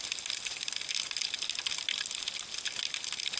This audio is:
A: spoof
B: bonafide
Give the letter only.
B